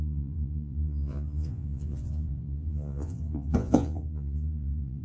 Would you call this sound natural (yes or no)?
no